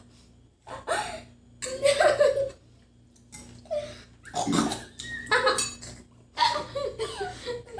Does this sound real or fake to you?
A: real